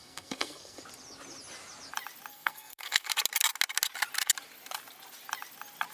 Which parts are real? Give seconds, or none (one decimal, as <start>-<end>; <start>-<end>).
0.8-2.3; 3.1-5.9